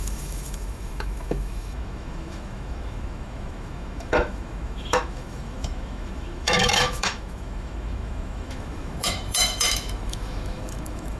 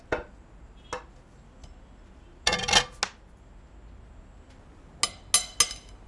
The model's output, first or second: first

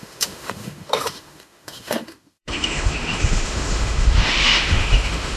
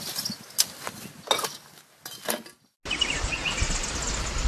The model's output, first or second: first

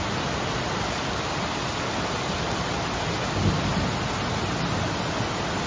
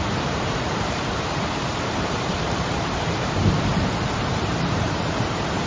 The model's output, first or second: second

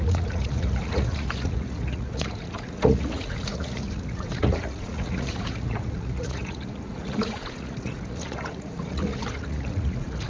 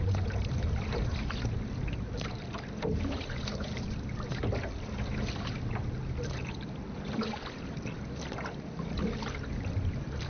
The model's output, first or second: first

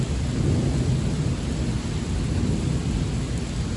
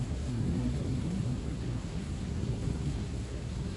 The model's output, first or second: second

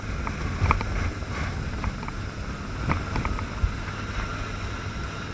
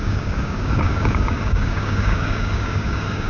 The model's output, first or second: second